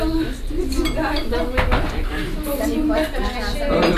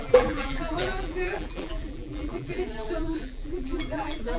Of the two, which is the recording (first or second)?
first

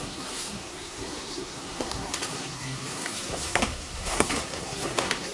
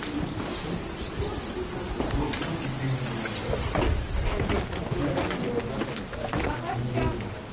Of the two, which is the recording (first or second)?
second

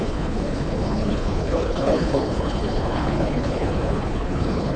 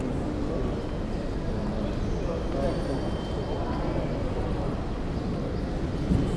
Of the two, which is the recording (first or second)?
second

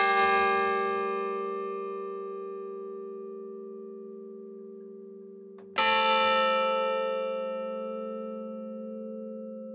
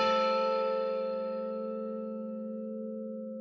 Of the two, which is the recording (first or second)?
first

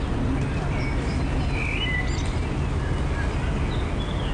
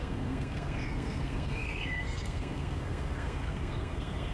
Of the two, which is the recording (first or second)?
first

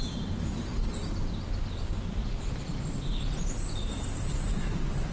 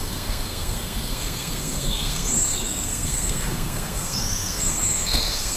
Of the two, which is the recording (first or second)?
first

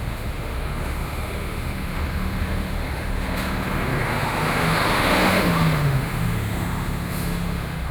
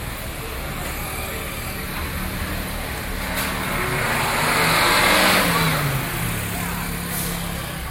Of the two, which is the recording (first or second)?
second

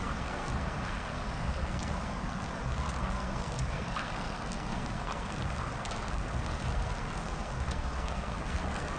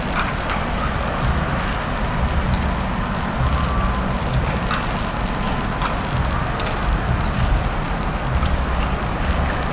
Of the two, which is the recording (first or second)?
second